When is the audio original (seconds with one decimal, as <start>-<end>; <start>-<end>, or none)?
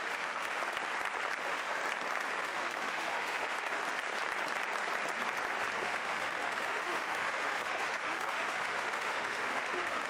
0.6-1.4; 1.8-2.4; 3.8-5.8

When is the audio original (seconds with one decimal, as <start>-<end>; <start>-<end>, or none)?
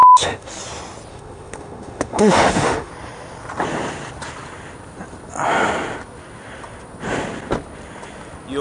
0.5-1.1; 2.9-8.6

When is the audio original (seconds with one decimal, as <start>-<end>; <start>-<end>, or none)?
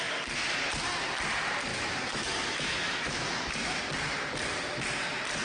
0.0-1.7; 3.8-5.4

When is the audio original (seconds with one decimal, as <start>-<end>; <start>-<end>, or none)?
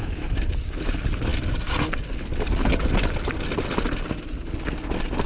0.9-5.3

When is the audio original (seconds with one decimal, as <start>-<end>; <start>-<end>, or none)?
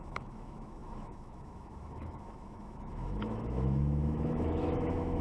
none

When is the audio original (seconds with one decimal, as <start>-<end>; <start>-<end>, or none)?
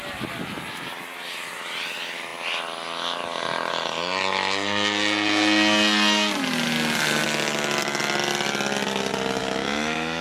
0.0-9.4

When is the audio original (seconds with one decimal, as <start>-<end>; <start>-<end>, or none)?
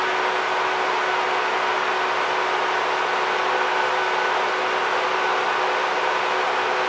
0.0-6.9